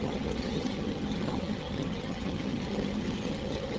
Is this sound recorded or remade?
remade